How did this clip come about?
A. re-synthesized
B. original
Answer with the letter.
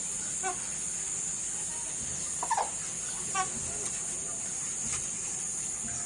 B